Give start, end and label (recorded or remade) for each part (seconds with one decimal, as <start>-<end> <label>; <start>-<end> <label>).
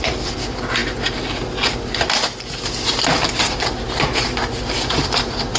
0.0-5.6 recorded